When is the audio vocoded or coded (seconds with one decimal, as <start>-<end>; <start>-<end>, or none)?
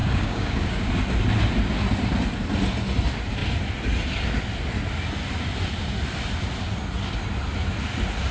0.0-0.9